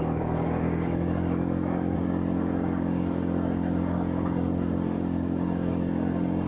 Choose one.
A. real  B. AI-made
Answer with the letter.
B